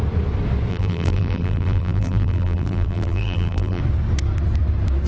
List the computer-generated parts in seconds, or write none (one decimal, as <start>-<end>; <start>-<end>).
0.7-3.8